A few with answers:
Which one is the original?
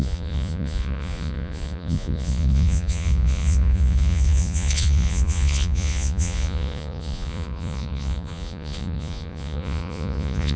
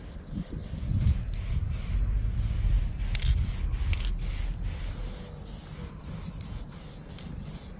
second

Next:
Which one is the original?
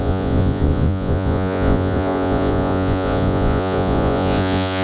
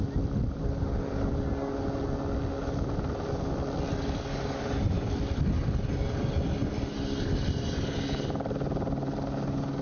second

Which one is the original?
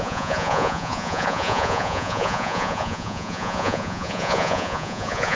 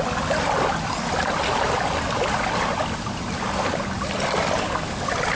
second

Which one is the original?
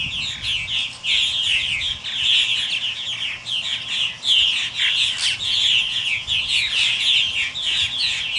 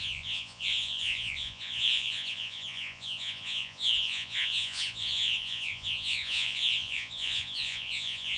first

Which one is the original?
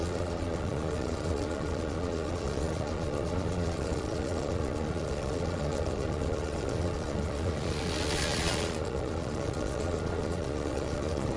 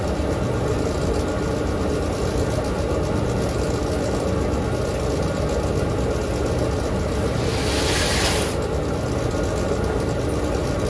second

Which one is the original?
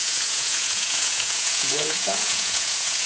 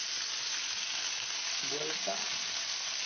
second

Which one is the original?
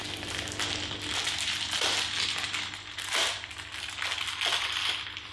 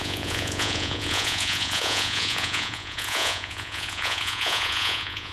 first